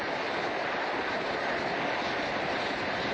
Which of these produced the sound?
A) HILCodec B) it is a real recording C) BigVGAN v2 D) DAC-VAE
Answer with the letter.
B